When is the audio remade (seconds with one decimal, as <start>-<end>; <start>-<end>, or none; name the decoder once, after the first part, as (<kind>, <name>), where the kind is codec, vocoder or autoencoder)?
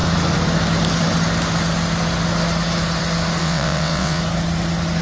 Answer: 3.4-4.2 (vocoder, WaveNeXt)